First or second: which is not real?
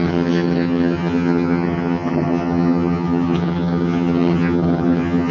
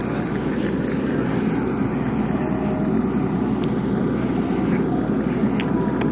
first